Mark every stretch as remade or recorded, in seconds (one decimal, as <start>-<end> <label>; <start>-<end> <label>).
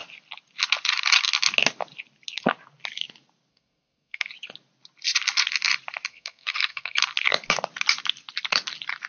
0.0-3.5 recorded; 3.5-4.3 remade; 4.3-6.1 recorded; 6.1-7.0 remade; 7.0-9.1 recorded